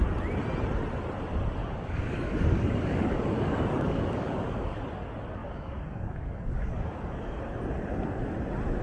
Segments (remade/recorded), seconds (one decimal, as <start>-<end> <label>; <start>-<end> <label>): 0.0-1.6 recorded; 1.6-4.8 remade; 4.8-5.4 recorded; 5.4-7.4 remade; 7.4-8.8 recorded